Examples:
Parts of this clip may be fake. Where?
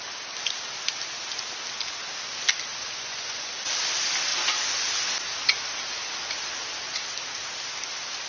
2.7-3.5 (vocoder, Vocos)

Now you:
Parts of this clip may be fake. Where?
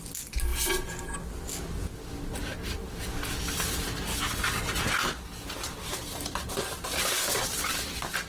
5.9-6.7 (vocoder, BigVGAN v2)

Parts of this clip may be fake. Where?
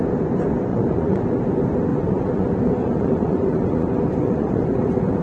0.7-1.2 (vocoder, Vocos); 1.9-5.2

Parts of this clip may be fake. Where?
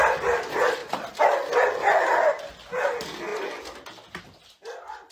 none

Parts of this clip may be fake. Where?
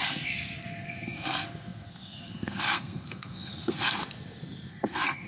0.0-4.0 (codec, SNAC); 4.7-5.3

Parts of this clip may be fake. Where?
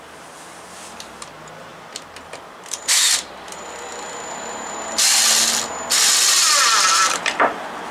1.7-5.2 (vocoder, BigVGAN v2); 6.4-7.2